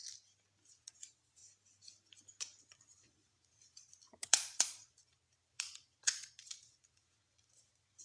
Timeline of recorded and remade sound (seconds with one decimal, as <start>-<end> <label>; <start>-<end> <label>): 0.0-0.7 recorded; 0.7-1.4 remade; 1.4-2.6 recorded; 2.6-8.0 remade